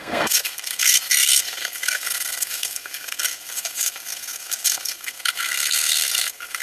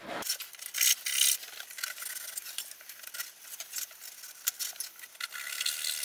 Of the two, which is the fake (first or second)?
first